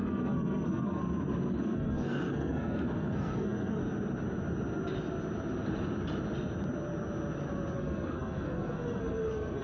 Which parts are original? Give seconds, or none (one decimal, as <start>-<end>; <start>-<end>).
1.0-1.6; 3.8-7.8